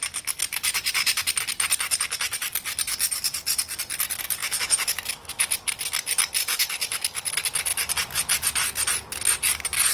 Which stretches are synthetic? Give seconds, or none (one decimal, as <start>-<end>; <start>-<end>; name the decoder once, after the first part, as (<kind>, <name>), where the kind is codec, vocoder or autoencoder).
4.4-5.5 (autoencoder, DAC-VAE); 6.4-7.3